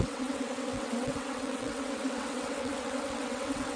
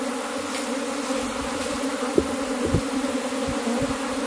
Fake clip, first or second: first